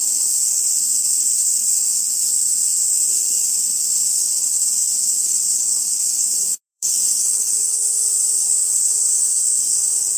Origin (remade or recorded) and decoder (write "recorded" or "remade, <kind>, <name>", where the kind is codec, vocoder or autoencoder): remade, codec, SNAC